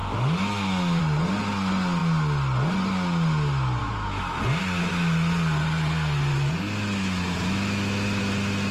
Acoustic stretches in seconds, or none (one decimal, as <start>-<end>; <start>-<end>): 1.0-3.8; 4.4-6.3; 8.2-8.7